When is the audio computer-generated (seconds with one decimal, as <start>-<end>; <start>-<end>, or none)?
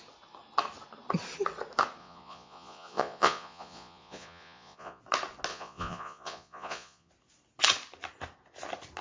2.0-5.0; 5.5-7.1